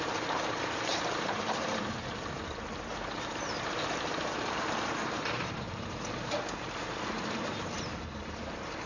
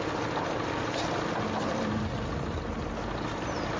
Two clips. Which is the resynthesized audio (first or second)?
first